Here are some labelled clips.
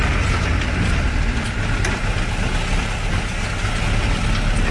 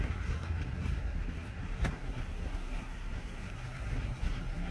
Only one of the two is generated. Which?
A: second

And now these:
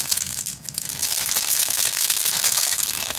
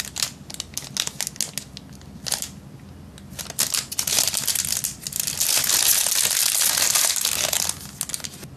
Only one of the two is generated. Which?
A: first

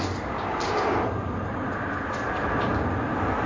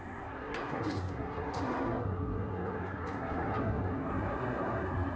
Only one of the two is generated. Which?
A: second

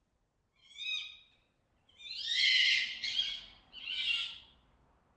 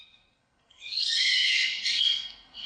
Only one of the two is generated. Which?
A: second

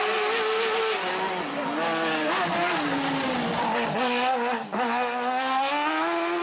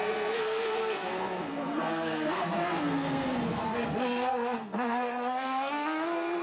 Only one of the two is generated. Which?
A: second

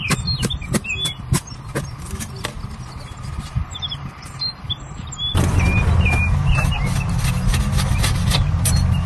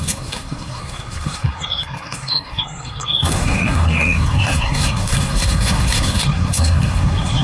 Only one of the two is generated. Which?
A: second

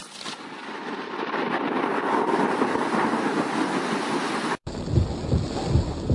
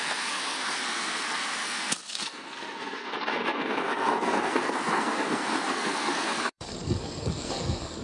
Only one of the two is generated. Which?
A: second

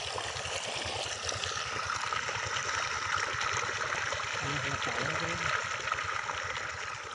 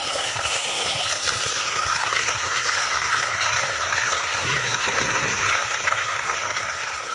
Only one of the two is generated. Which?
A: second